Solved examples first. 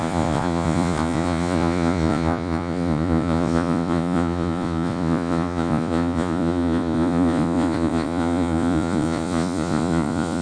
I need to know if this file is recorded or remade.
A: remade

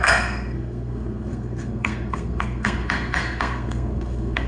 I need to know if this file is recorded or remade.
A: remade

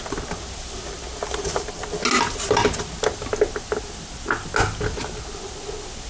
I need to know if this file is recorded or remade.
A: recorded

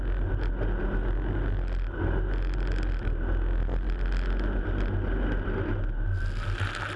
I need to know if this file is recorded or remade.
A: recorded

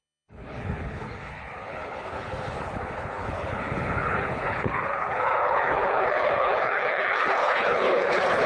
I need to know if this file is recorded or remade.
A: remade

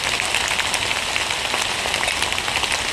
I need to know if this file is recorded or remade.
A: recorded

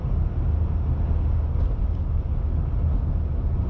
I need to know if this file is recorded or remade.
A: recorded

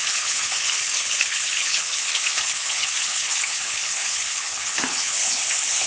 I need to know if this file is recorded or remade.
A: remade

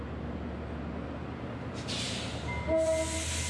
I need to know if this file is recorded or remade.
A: recorded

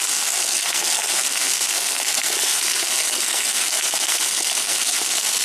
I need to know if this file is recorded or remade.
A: remade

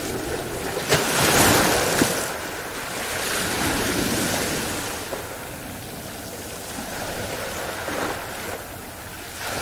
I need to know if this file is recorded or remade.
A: recorded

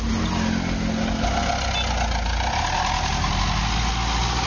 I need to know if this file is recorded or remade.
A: recorded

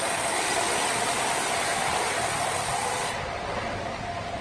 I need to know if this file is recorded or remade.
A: recorded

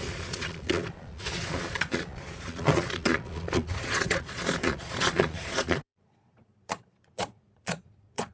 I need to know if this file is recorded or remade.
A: remade